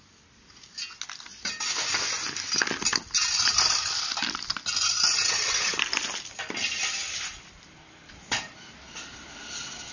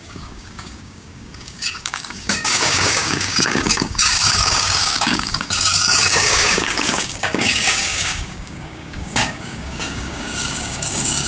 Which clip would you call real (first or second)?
first